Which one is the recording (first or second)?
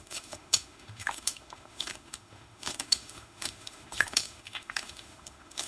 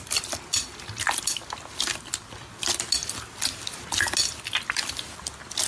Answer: second